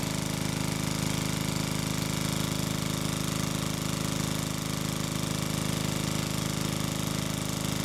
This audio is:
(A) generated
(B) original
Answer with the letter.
B